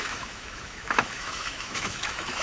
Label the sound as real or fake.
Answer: fake